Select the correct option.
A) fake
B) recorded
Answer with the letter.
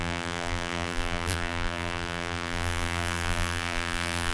A